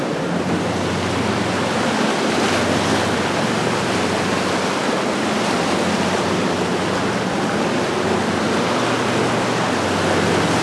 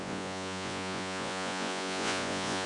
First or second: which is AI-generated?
second